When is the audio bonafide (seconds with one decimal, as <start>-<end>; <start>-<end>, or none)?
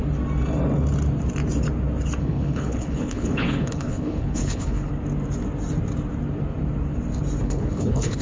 0.0-2.2; 4.9-7.4